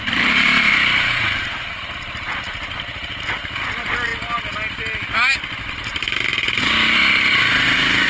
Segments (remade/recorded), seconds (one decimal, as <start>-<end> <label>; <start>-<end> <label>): 0.0-1.4 remade; 1.4-8.1 recorded